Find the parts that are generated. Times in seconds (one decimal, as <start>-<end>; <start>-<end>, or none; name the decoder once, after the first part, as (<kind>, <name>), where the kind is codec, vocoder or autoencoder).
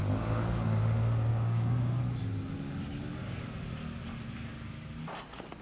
1.3-2.0 (codec, DAC)